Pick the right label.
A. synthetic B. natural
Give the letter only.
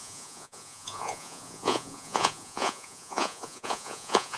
A